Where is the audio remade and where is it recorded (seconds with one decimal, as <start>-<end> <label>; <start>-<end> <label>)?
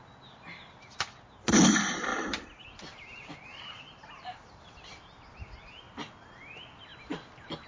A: 0.0-2.1 recorded; 2.1-2.6 remade; 2.6-3.5 recorded; 3.5-4.5 remade; 4.5-7.7 recorded